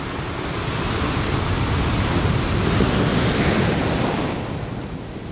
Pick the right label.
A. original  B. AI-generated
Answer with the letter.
A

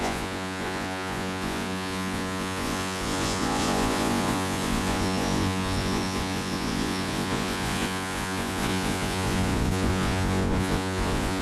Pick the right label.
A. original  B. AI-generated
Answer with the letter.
B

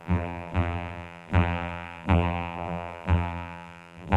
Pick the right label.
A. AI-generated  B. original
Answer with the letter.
A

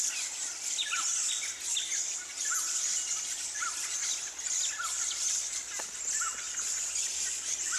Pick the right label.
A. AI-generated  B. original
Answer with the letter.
B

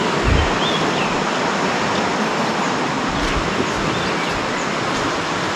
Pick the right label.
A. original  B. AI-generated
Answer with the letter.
A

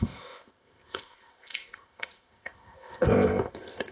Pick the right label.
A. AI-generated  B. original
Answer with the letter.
A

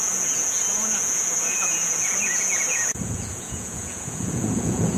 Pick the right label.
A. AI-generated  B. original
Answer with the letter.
A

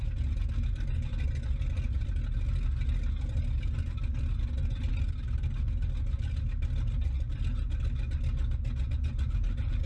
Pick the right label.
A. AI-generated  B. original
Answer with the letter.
B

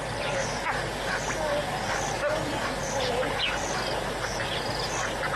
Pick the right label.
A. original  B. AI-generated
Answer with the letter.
A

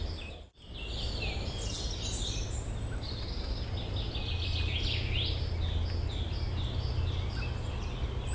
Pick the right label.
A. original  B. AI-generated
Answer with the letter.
A